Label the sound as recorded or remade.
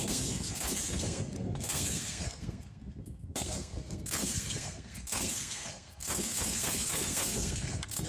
remade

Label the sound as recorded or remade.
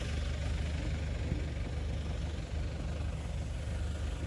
recorded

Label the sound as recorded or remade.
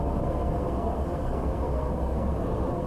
remade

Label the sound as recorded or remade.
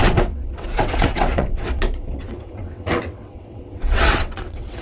remade